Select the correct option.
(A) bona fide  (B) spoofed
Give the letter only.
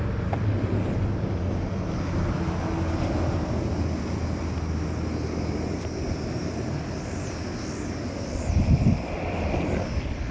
A